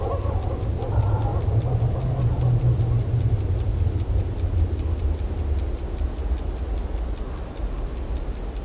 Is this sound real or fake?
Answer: real